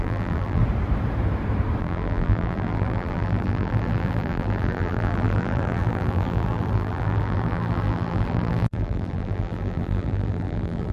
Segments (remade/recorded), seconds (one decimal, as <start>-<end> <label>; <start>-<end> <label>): 0.0-0.6 remade; 0.6-1.8 recorded; 1.8-10.9 remade